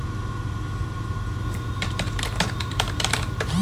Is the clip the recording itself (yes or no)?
no